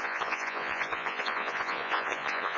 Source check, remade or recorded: remade